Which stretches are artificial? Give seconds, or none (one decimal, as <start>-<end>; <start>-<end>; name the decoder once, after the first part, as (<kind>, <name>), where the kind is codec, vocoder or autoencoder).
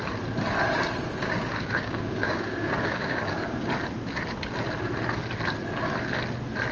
1.2-3.7 (codec, DAC)